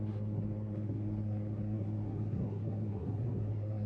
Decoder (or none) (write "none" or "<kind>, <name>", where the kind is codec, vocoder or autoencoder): codec, SNAC